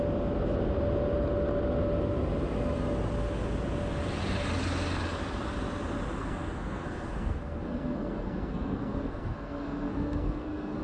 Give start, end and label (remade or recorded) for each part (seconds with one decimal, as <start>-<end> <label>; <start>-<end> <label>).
0.0-6.2 recorded; 6.2-10.8 remade